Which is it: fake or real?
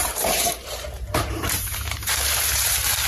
fake